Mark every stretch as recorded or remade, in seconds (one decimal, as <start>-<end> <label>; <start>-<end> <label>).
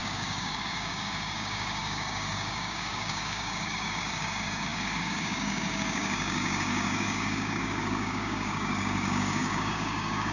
0.0-10.3 remade